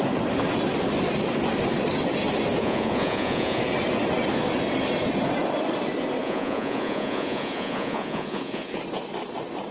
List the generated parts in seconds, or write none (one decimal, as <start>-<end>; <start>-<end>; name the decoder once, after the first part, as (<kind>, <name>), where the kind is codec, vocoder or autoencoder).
2.6-3.6 (vocoder, Vocos); 6.2-8.8